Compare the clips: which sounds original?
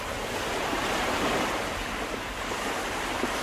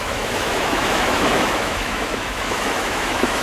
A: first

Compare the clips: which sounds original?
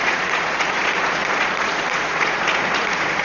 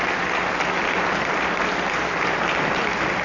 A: second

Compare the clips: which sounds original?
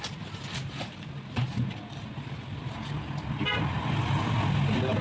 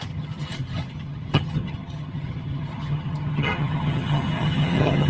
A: first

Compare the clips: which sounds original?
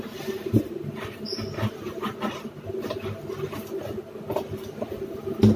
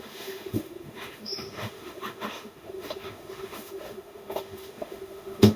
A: first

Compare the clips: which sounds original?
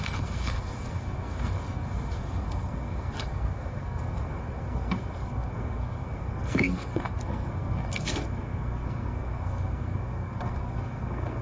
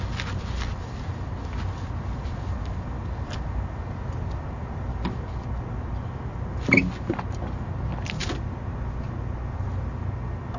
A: second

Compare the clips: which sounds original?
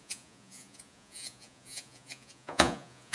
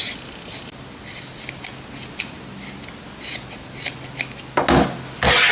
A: second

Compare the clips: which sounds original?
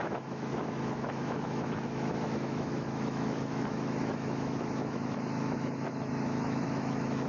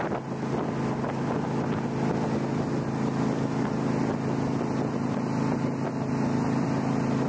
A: second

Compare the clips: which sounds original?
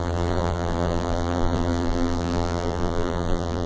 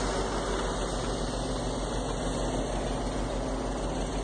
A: second